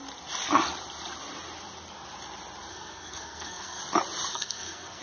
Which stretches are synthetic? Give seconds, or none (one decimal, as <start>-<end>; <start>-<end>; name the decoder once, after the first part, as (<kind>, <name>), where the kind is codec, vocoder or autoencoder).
2.7-3.8 (codec, SNAC); 4.3-5.0